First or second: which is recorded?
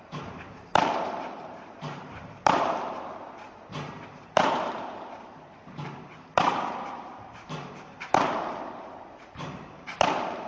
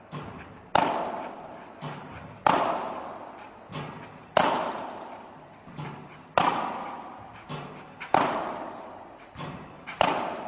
second